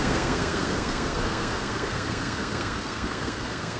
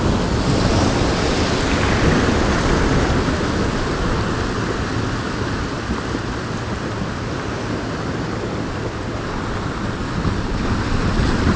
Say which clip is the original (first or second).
second